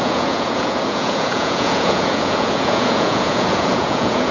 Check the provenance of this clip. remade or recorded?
remade